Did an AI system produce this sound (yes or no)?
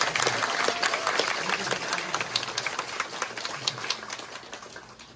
no